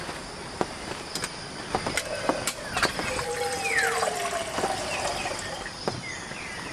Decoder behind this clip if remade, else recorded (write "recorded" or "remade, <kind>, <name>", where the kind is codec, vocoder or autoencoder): recorded